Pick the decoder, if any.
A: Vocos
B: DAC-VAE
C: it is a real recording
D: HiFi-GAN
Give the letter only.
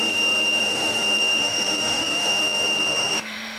B